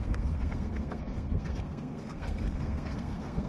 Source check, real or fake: fake